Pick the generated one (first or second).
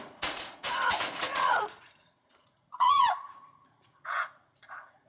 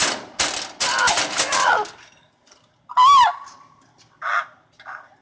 first